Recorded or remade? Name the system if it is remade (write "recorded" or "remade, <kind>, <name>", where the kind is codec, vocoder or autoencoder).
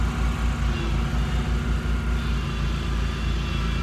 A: recorded